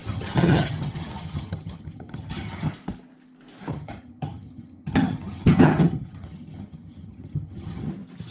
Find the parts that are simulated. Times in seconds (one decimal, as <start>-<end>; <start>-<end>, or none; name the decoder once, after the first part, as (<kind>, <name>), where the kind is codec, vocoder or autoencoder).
0.0-2.7 (vocoder, HiFi-GAN); 3.7-7.9